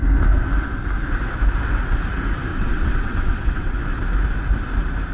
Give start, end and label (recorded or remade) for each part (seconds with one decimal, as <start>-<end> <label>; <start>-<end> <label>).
0.0-2.5 recorded; 2.5-3.8 remade; 3.8-5.1 recorded